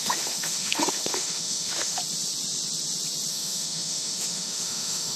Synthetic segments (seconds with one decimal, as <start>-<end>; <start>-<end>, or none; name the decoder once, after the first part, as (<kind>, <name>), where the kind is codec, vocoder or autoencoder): 0.0-2.0 (autoencoder, DAC-VAE); 3.3-5.2